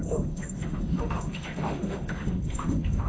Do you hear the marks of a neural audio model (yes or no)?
yes